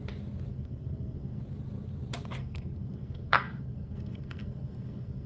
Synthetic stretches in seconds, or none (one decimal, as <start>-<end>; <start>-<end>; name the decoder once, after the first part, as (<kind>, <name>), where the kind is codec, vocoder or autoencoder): 0.5-1.4 (codec, SNAC); 2.4-5.3